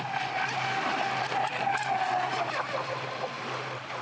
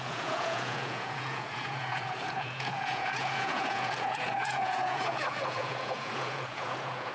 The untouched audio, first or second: first